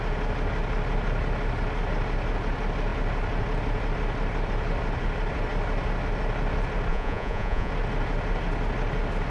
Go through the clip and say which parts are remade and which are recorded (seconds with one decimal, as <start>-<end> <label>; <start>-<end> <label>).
0.0-6.9 recorded; 6.9-7.7 remade; 7.7-9.3 recorded